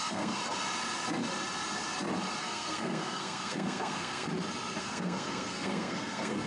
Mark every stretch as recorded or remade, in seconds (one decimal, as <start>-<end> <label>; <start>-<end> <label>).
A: 0.0-0.4 remade; 0.4-2.4 recorded; 2.4-4.3 remade; 4.3-4.8 recorded; 4.8-6.5 remade